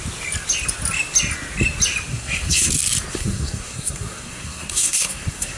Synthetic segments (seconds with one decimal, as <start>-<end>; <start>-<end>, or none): 2.1-2.7; 3.1-5.6